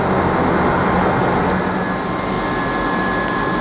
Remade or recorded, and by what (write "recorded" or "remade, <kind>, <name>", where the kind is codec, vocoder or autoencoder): recorded